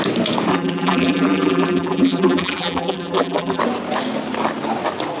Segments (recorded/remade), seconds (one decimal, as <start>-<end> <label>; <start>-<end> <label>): 0.0-0.5 recorded; 0.5-3.6 remade; 3.6-5.2 recorded